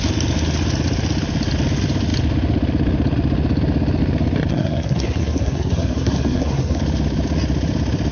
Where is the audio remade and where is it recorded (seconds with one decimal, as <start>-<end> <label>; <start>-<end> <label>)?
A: 0.0-4.5 recorded; 4.5-6.8 remade; 6.8-8.1 recorded